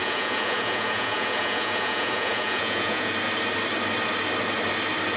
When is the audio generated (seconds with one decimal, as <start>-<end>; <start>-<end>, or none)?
0.0-3.1